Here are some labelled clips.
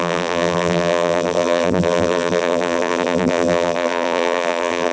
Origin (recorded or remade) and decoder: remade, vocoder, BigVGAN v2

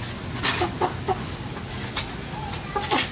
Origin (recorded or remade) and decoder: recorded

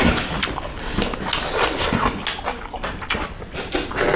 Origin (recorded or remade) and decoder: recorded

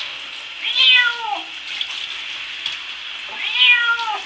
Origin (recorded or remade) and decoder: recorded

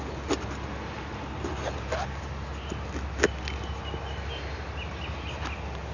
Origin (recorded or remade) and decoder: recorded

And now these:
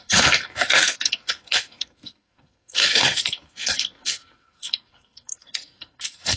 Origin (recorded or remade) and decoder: remade, codec, SNAC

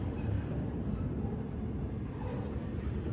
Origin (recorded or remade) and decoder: remade, vocoder, BigVGAN v2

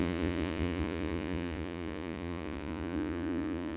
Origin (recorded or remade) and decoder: remade, vocoder, Vocos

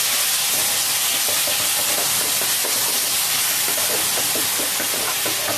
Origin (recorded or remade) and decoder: recorded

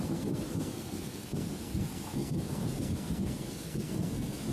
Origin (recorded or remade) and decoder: remade, codec, SNAC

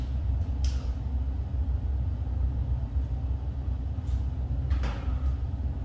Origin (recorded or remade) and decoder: recorded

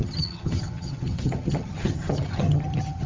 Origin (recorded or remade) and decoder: remade, vocoder, HiFi-GAN